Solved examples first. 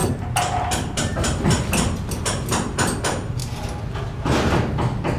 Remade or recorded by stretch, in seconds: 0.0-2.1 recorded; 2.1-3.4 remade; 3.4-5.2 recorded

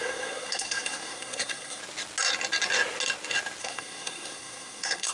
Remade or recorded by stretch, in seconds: 0.0-1.8 remade; 1.8-3.6 recorded; 3.6-5.1 remade

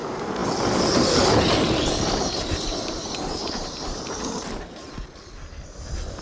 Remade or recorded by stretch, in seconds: 0.0-6.2 recorded